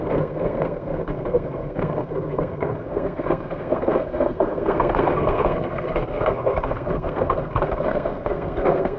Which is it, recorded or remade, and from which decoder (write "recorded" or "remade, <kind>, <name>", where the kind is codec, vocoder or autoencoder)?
remade, codec, SNAC